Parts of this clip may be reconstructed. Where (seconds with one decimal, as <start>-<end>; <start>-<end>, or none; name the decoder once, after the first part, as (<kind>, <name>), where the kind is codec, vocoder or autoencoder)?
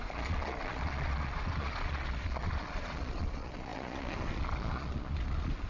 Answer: 0.0-5.7 (vocoder, Vocos)